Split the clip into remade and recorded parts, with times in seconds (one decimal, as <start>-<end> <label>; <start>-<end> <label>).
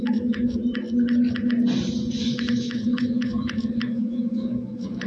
0.0-0.6 remade; 0.6-2.2 recorded; 2.2-5.1 remade